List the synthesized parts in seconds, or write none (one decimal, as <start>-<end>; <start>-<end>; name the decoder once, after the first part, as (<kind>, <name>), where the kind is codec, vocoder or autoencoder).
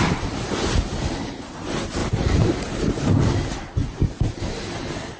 2.0-3.1 (vocoder, BigVGAN v2); 3.8-4.4